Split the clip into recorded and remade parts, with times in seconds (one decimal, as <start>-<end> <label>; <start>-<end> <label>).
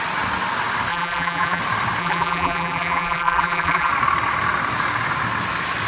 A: 0.0-0.9 recorded; 0.9-1.6 remade; 1.6-2.0 recorded; 2.0-3.9 remade; 3.9-5.9 recorded